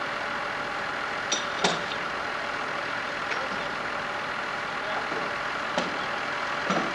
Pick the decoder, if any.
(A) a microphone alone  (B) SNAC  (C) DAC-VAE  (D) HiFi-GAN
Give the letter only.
A